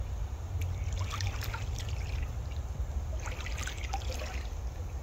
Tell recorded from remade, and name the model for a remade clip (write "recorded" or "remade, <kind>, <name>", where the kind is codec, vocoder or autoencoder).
recorded